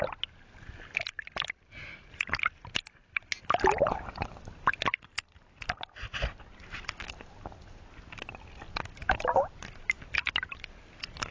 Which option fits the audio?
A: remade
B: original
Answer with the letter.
B